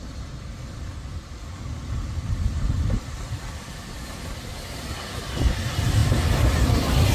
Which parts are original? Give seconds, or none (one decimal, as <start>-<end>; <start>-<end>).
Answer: 0.0-1.1; 5.3-7.1